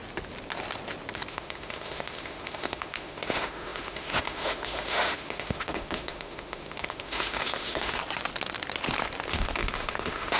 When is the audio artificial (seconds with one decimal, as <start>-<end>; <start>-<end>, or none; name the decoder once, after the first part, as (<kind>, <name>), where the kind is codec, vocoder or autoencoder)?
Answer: 1.3-8.0 (autoencoder, DAC-VAE); 9.3-10.4